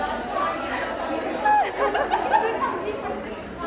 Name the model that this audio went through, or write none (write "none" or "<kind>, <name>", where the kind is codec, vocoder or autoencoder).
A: none